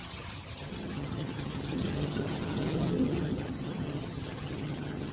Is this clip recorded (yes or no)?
no